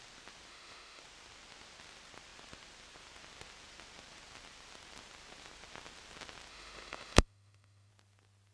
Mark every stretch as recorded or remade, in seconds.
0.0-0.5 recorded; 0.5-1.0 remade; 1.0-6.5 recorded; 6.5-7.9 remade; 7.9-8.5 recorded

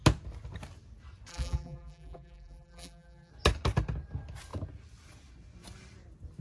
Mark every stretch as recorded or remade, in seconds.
0.0-1.3 recorded; 1.3-3.3 remade; 3.3-6.4 recorded

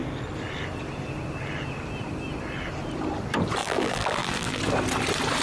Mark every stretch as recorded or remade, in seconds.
0.0-3.6 recorded; 3.6-4.6 remade; 4.6-5.4 recorded